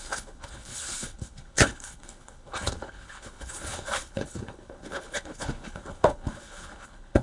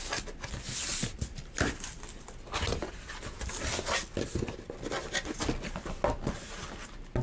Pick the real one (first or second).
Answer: second